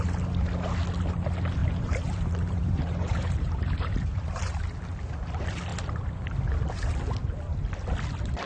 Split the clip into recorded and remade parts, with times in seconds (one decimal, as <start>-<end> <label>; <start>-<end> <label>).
0.0-1.6 recorded; 1.6-4.5 remade; 4.5-8.5 recorded